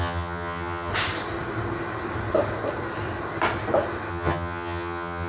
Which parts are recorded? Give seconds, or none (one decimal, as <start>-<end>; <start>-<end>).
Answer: 0.9-4.1